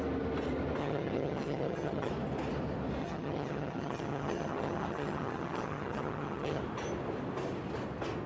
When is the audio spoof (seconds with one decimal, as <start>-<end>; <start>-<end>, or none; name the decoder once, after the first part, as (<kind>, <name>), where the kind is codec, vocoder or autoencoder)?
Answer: 0.8-2.1 (vocoder, HiFi-GAN); 3.0-6.6

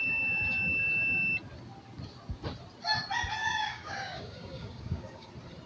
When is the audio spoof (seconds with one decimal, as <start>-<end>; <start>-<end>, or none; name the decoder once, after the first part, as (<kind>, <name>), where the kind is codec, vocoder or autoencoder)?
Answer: 3.4-5.3 (codec, DAC)

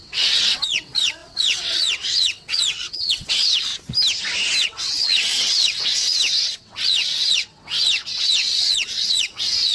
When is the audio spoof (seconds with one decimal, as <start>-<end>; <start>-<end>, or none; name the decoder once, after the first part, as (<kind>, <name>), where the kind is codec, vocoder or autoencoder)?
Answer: 0.0-3.7 (vocoder, WaveNeXt); 4.6-9.7

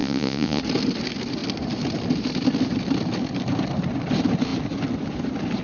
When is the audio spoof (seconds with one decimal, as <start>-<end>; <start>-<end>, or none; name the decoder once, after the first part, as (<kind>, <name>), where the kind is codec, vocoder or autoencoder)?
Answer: 0.0-0.6 (vocoder, Vocos)

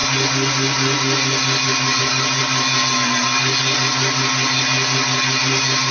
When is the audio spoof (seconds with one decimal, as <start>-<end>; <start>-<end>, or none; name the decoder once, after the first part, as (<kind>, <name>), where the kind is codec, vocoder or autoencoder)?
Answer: none

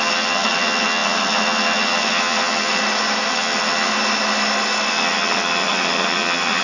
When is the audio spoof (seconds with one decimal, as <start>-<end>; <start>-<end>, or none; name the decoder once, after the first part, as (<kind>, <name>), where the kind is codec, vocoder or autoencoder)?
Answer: 0.0-2.8 (vocoder, HiFi-GAN); 3.3-3.9; 4.9-6.6

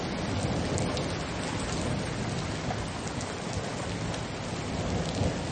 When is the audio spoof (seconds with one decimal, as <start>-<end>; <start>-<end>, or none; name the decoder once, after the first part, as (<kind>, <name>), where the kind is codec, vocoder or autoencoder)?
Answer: none

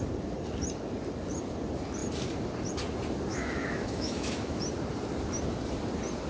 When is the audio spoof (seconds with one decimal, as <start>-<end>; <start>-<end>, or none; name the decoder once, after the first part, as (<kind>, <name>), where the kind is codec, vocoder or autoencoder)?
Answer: 3.3-4.6 (autoencoder, DAC-VAE)